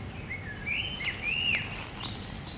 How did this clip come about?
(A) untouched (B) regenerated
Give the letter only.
A